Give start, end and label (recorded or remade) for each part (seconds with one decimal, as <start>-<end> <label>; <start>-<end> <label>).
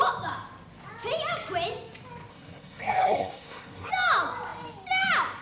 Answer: 0.0-2.3 recorded; 2.3-3.9 remade; 3.9-5.4 recorded